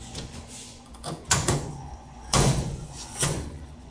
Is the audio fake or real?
fake